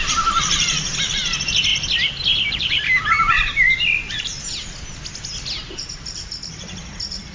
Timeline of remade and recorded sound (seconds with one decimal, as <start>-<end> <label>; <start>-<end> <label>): 0.0-1.7 remade; 1.7-2.6 recorded; 2.6-4.5 remade; 4.5-5.6 recorded; 5.6-7.3 remade